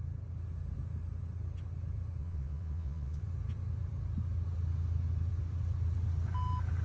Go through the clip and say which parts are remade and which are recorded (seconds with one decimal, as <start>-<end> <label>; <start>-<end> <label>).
0.0-2.2 recorded; 2.2-3.2 remade; 3.2-6.8 recorded